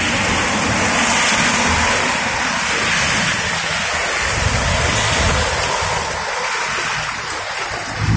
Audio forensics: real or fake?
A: real